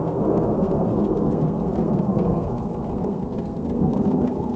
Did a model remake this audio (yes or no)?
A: yes